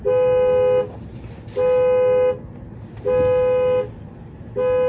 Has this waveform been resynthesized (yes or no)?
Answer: no